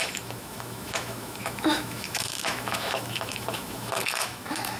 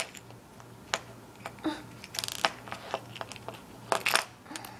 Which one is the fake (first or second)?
first